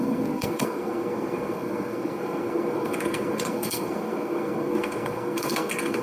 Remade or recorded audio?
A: remade